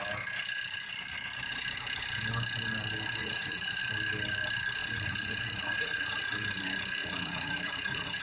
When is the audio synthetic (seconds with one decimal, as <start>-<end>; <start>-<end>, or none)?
3.2-3.8; 4.8-6.3; 7.0-8.2